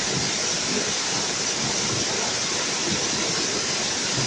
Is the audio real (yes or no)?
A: yes